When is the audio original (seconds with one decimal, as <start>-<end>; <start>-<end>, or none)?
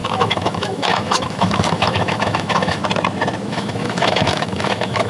2.8-3.5